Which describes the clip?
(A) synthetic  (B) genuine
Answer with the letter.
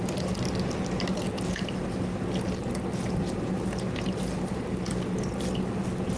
B